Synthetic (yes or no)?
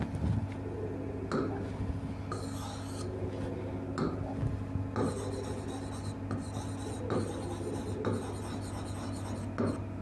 no